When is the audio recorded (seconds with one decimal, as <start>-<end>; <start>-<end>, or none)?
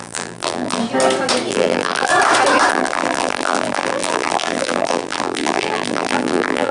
0.8-1.5; 2.1-2.7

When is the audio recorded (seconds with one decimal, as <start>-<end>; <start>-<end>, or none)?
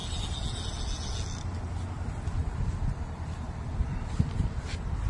0.0-2.4; 4.6-5.1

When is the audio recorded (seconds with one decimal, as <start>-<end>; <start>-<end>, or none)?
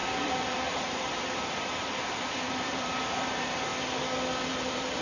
3.7-4.5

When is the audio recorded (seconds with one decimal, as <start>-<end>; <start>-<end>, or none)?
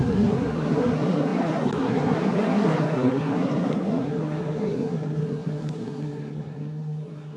none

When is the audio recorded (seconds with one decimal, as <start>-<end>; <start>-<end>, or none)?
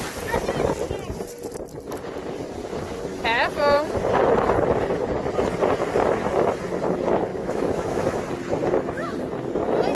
0.0-7.3; 8.2-9.9